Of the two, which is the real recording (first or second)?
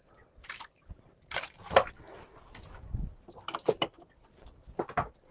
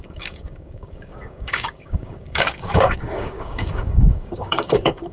first